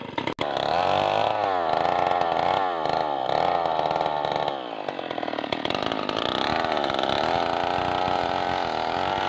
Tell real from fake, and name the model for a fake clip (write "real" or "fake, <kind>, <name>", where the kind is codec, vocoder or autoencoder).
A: real